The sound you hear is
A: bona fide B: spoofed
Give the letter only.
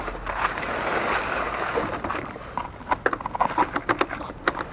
A